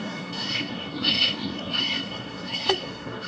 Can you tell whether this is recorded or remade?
remade